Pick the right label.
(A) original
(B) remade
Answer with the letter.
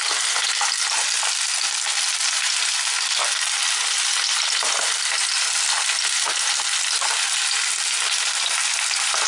A